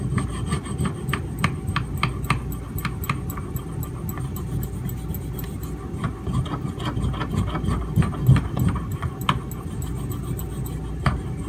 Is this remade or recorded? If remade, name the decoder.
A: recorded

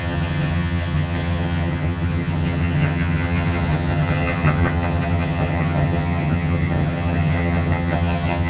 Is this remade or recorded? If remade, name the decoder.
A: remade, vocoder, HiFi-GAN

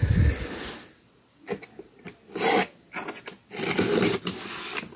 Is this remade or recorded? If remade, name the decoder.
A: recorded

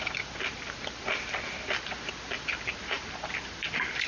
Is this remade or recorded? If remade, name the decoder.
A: recorded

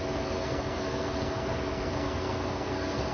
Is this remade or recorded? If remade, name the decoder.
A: remade, codec, SNAC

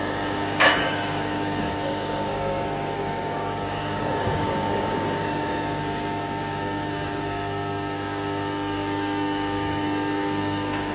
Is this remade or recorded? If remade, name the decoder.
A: remade, codec, DAC